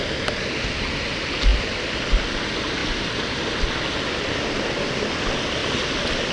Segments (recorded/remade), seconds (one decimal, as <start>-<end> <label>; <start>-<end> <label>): 0.0-6.3 recorded